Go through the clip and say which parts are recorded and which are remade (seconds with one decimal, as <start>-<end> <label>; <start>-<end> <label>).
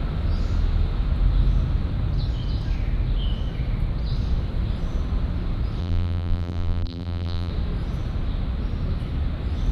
0.0-5.8 recorded; 5.8-7.5 remade; 7.5-9.7 recorded